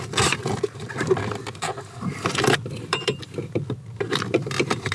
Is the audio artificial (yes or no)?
yes